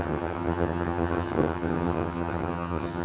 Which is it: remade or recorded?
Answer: remade